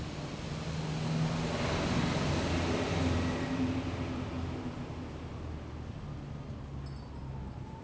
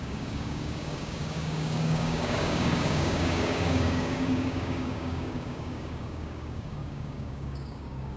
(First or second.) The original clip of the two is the first